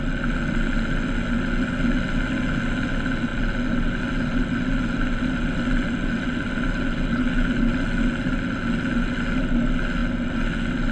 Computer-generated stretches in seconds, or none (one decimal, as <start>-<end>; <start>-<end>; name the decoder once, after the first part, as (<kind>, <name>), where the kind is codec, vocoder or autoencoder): none